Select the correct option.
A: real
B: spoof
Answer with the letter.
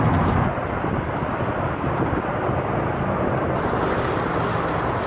A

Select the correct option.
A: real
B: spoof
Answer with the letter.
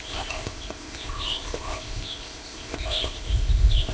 B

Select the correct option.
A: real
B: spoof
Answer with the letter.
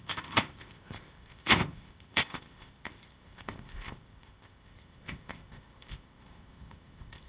B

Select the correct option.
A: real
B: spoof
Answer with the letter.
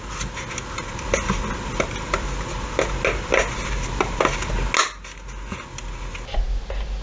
A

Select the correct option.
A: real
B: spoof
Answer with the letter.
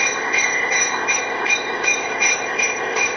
B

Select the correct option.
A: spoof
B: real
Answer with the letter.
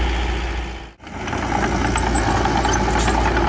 B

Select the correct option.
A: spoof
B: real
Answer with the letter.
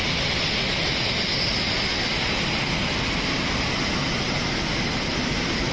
B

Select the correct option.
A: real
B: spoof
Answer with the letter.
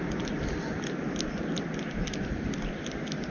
A